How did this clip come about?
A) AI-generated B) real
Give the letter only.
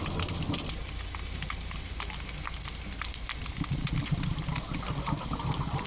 B